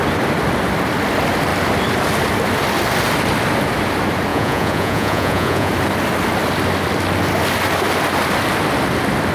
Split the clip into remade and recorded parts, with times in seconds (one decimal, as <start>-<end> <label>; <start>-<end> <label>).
0.0-4.3 recorded; 4.3-5.7 remade; 5.7-9.3 recorded